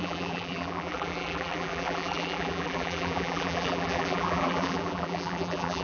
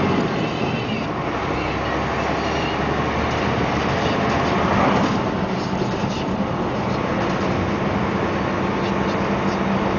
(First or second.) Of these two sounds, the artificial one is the first